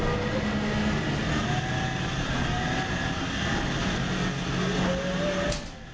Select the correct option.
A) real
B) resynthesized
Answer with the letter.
A